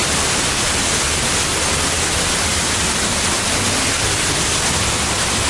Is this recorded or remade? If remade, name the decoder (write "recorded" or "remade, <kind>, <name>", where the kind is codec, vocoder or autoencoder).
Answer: recorded